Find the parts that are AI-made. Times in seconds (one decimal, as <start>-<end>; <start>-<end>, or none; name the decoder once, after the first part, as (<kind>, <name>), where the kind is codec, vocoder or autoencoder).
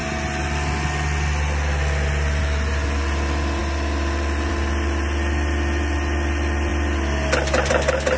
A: none